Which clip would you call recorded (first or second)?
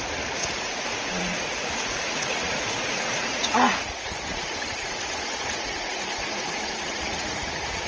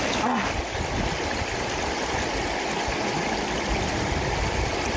second